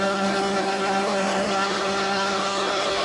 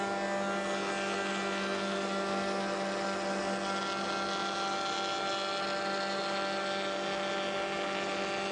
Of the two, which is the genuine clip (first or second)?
second